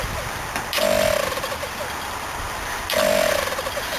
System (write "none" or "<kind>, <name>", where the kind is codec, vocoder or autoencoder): vocoder, BigVGAN v2